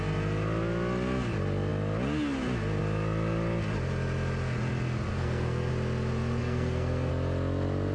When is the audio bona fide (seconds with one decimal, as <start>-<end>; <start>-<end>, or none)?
0.0-5.1; 5.7-6.4; 7.1-7.9